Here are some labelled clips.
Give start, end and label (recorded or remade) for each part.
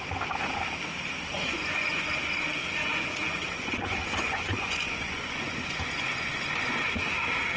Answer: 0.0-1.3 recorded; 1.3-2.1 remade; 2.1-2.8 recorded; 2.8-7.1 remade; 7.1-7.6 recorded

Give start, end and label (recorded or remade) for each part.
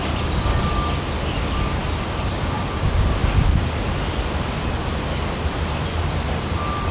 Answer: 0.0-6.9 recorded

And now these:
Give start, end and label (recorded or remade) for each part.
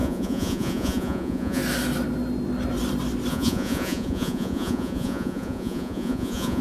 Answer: 0.0-1.6 remade; 1.6-3.3 recorded; 3.3-6.6 remade